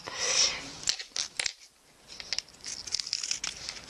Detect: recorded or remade recorded